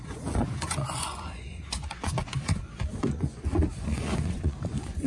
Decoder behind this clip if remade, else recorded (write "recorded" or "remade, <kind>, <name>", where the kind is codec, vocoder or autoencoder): remade, vocoder, Vocos